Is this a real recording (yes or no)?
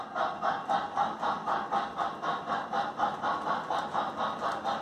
yes